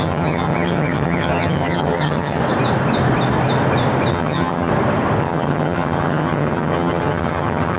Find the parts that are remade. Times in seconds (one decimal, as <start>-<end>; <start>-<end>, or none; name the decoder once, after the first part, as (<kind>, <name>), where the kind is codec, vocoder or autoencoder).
0.0-2.4 (vocoder, HiFi-GAN); 4.1-4.7; 5.2-7.8